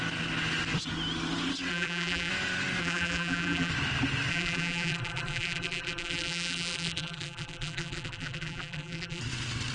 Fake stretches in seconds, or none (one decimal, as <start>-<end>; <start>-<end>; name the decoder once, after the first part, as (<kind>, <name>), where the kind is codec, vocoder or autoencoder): 1.7-2.3 (vocoder, BigVGAN v2); 2.8-3.7; 4.3-9.2